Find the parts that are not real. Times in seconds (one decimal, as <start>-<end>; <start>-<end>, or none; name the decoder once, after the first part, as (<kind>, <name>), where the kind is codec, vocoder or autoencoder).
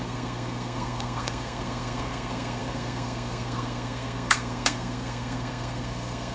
0.0-6.3 (codec, SNAC)